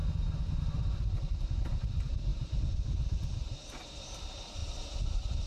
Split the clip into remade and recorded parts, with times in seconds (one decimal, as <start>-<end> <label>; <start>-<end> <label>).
0.0-4.6 recorded; 4.6-5.1 remade; 5.1-5.5 recorded